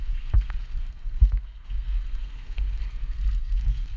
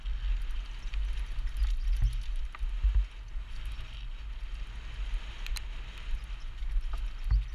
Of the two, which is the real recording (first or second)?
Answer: second